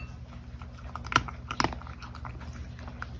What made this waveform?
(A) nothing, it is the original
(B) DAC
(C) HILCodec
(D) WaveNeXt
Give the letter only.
A